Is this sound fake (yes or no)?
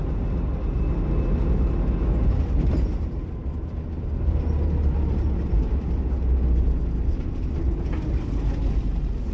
no